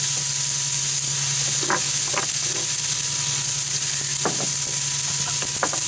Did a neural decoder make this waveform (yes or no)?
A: no